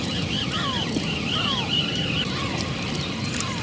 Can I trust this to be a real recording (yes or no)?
yes